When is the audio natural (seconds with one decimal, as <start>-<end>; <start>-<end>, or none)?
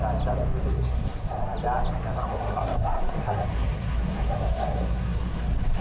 0.0-0.6; 1.4-2.2